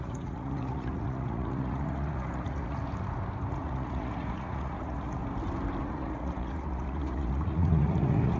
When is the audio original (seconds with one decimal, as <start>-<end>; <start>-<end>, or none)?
2.8-3.5; 5.2-5.8

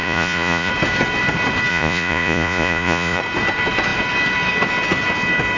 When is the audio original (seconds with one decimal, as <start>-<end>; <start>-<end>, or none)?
0.7-1.7; 3.2-5.6

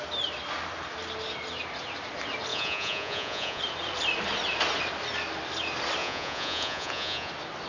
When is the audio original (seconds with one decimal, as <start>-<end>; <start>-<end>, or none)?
0.0-2.5; 3.6-6.0; 7.3-7.7

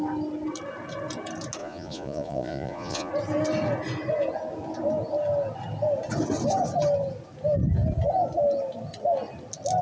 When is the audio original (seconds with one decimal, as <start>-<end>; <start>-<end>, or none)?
0.0-1.6; 3.1-9.8

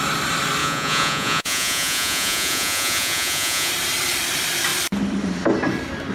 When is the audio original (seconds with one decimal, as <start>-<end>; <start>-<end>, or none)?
0.0-0.6; 3.7-6.1